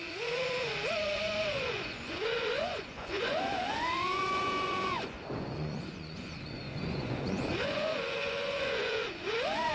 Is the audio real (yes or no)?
no